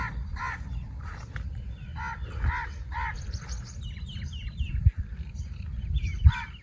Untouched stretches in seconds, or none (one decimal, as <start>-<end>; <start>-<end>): 0.0-6.6

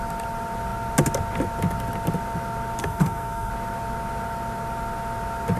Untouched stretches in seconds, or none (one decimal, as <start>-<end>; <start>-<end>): 0.0-2.8; 3.5-5.6